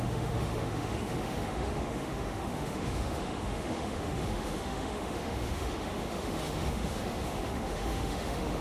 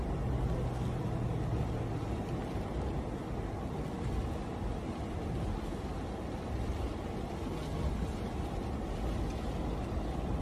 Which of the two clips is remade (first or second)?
first